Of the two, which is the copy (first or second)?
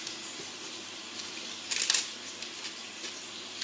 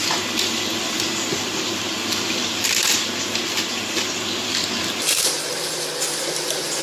second